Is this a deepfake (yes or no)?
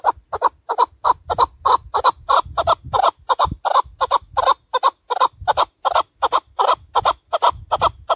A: no